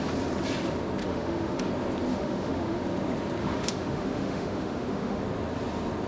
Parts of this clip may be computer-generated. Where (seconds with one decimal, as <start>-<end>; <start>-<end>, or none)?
1.0-1.7; 2.1-2.8; 3.4-5.2